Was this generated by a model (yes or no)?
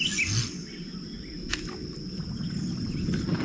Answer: no